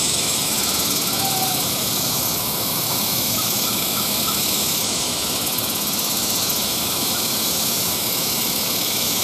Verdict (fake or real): fake